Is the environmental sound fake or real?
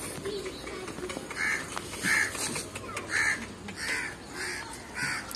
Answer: real